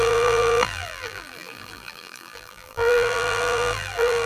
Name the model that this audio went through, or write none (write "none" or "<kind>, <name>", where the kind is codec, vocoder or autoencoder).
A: vocoder, BigVGAN v2